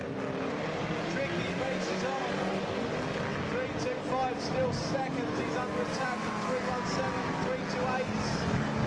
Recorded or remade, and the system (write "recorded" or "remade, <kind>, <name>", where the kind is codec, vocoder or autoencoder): recorded